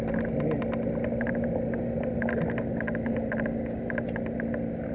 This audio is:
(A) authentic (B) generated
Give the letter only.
A